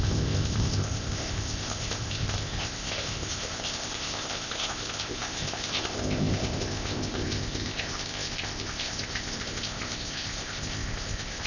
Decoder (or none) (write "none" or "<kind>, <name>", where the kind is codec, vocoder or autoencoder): codec, ZipCodec